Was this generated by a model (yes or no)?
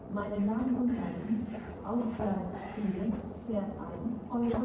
yes